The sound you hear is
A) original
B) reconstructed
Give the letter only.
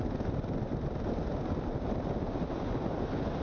A